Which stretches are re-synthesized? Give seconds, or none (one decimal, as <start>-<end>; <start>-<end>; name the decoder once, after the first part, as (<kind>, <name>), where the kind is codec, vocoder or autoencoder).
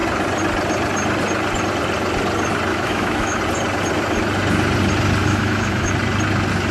2.7-3.4 (autoencoder, DAC-VAE); 5.2-5.9